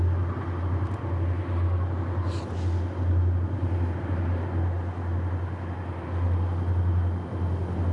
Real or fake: real